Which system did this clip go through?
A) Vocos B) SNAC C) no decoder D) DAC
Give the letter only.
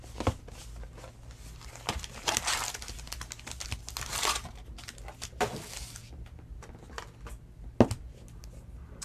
C